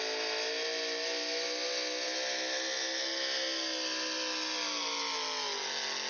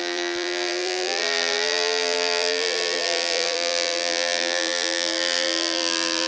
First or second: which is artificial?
second